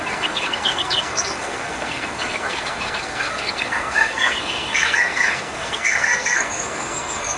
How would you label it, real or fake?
fake